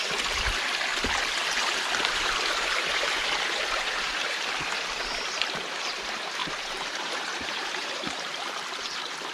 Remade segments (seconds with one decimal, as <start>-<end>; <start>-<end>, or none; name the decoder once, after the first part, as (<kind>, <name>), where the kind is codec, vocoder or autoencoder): 1.4-4.5 (vocoder, BigVGAN v2); 6.4-8.4